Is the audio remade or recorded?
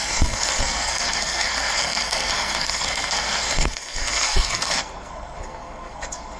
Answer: remade